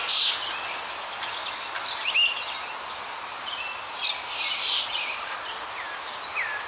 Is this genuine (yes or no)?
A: yes